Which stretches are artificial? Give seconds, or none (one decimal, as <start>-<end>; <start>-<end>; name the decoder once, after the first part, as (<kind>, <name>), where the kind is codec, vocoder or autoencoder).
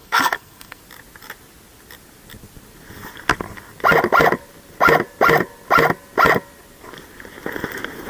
0.0-0.8 (codec, SNAC)